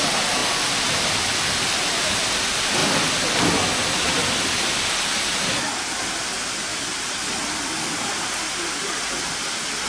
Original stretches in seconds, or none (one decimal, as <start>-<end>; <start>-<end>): 0.0-2.8; 3.4-9.9